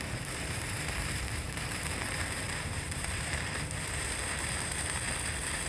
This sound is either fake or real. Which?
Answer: fake